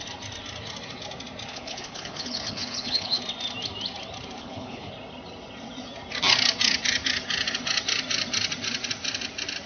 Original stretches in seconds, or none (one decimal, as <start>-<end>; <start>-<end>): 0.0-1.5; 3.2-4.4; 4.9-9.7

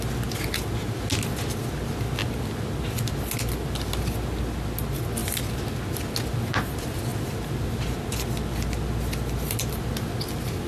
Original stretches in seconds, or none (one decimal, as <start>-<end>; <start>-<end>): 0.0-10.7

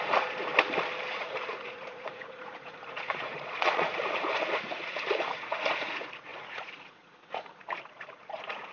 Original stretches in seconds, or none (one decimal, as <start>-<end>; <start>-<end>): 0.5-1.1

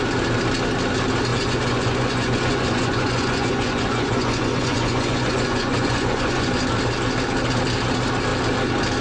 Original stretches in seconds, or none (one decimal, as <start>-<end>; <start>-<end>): 0.0-1.3; 6.6-9.0

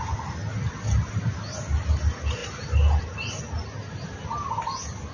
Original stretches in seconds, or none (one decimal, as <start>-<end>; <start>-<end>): 0.0-5.1